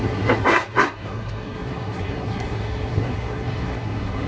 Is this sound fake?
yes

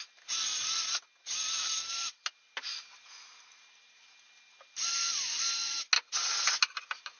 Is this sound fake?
no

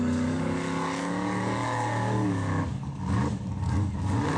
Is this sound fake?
yes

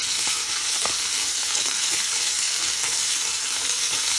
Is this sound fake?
yes